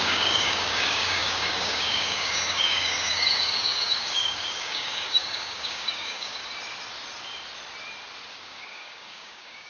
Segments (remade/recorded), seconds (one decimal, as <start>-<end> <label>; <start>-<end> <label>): 0.0-6.4 remade; 6.4-8.3 recorded; 8.3-9.7 remade